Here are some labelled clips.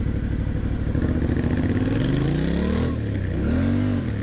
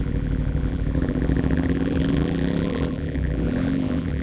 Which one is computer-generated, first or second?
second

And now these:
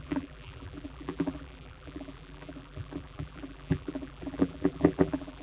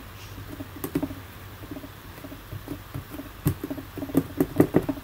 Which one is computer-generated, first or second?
first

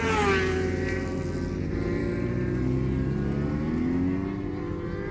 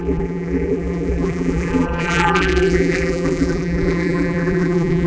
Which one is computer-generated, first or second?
second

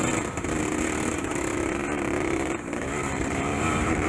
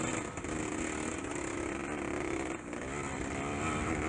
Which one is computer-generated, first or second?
first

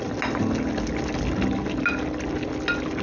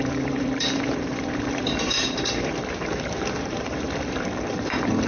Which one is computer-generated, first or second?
second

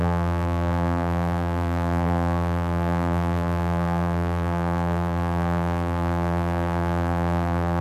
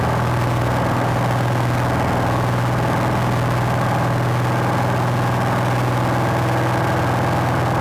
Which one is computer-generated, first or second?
first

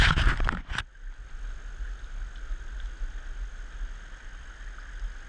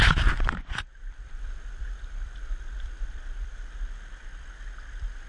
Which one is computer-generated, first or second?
second